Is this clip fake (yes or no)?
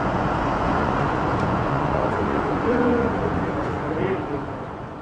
yes